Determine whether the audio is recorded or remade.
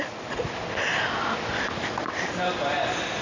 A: recorded